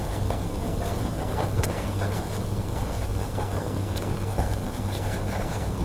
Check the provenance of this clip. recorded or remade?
remade